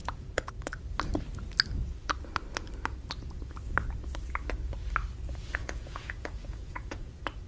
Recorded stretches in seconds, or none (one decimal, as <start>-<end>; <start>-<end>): 0.5-5.6; 7.1-7.5